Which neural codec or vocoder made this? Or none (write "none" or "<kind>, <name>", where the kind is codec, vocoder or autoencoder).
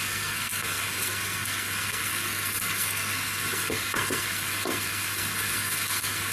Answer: codec, SNAC